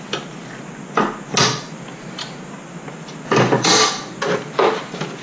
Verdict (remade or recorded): recorded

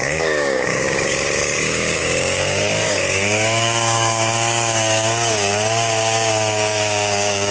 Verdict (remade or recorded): remade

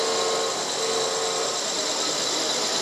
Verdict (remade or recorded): recorded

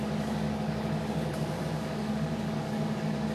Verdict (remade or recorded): remade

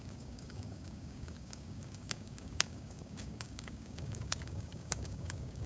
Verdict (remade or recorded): remade